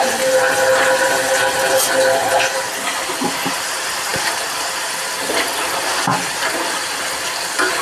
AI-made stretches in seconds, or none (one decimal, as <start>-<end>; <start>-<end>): none